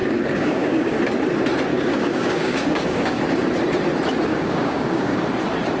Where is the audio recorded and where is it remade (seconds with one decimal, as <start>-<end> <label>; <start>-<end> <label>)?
0.0-1.0 remade; 1.0-1.7 recorded; 1.7-3.2 remade; 3.2-4.3 recorded; 4.3-5.2 remade; 5.2-5.8 recorded